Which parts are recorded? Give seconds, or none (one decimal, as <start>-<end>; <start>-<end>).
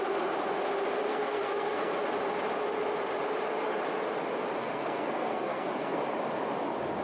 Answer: 0.0-1.1; 1.9-4.6; 6.0-7.0